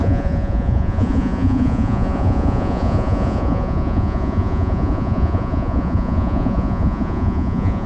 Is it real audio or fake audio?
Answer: fake